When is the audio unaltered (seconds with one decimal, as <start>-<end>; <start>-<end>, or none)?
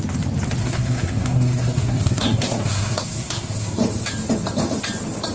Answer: 0.0-0.6; 3.8-5.3